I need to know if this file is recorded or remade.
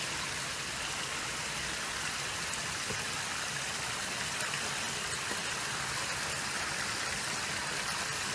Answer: recorded